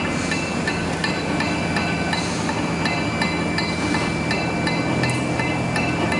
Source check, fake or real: real